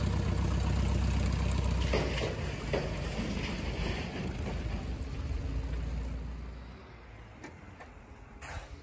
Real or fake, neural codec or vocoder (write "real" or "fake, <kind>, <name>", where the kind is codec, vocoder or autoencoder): real